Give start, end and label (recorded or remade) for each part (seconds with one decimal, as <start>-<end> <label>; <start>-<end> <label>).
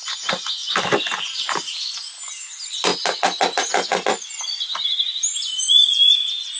0.0-6.6 recorded